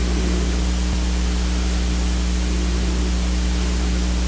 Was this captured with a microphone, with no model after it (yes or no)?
yes